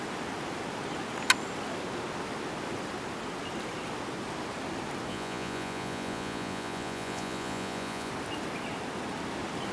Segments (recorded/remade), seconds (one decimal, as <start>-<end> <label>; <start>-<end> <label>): 0.0-5.1 recorded; 5.1-8.1 remade; 8.1-9.7 recorded